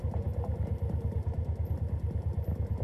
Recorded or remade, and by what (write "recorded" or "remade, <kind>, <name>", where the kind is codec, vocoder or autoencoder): recorded